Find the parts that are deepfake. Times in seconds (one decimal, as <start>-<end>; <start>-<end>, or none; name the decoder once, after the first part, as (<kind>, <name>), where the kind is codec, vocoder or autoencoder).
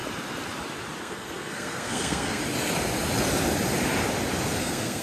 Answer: 1.0-2.4 (codec, SNAC); 4.6-5.0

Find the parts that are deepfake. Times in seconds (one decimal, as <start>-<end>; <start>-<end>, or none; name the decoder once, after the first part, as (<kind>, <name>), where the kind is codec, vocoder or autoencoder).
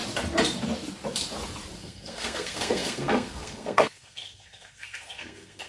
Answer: 1.8-5.7 (codec, SNAC)